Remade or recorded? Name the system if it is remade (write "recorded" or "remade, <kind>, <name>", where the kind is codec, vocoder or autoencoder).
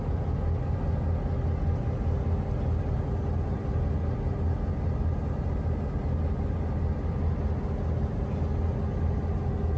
recorded